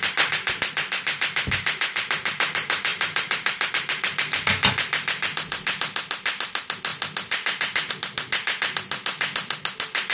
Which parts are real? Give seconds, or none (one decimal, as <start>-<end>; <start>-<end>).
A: 0.0-2.9; 3.7-10.1